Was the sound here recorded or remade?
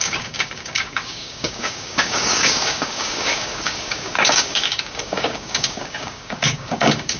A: remade